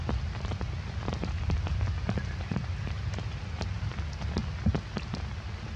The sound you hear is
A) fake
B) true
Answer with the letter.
B